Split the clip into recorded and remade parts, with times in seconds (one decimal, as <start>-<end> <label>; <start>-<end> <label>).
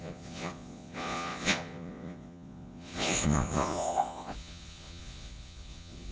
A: 0.0-6.1 remade